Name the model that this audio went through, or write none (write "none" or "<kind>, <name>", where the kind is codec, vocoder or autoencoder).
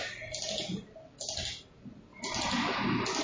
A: none